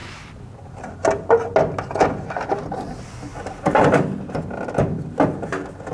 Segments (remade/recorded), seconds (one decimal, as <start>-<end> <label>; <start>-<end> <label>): 0.0-5.9 recorded